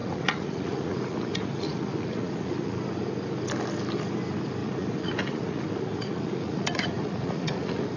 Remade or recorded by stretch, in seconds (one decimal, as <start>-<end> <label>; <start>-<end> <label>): 0.0-2.8 remade; 2.8-4.6 recorded; 4.6-8.0 remade